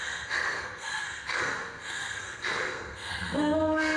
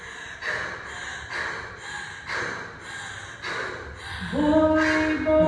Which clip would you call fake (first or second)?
first